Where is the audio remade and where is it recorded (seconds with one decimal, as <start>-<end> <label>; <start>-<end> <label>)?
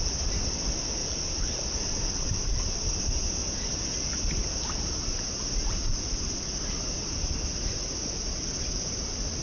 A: 0.0-1.0 recorded; 1.0-2.0 remade; 2.0-4.4 recorded; 4.4-9.4 remade